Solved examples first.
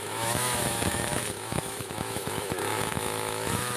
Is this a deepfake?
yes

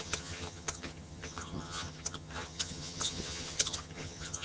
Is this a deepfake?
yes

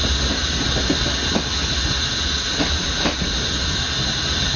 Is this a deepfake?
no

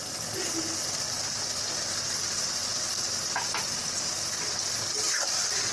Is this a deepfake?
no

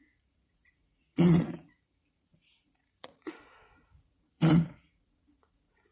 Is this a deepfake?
yes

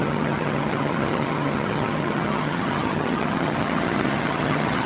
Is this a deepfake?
yes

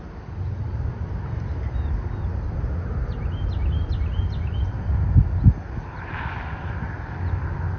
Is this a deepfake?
no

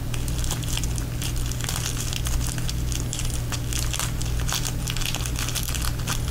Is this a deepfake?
no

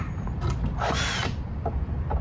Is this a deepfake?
no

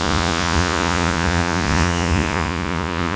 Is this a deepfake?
yes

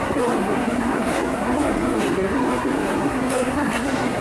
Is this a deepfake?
yes